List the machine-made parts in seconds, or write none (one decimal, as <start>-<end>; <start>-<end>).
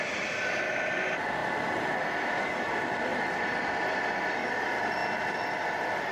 none